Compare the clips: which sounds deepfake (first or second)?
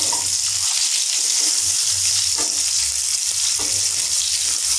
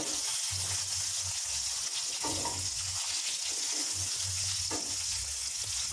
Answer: second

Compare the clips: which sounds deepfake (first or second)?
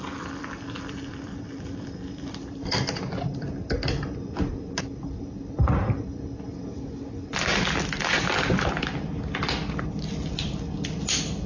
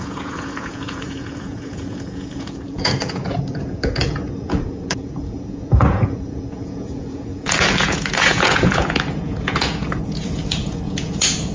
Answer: second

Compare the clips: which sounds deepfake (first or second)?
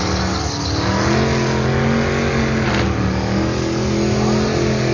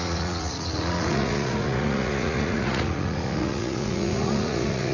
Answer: second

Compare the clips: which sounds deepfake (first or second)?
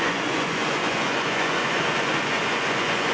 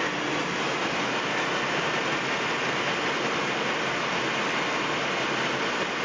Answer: first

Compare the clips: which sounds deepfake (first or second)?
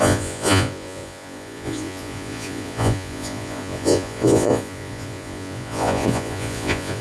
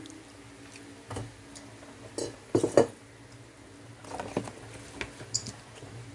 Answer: first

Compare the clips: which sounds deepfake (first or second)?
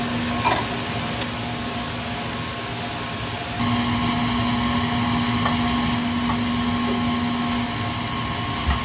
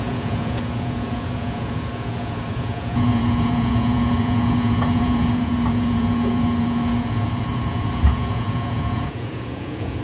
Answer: second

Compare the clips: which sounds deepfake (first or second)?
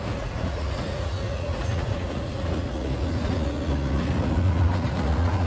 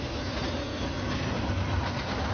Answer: first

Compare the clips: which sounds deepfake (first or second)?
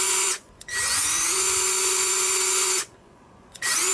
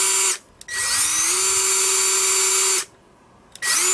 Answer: first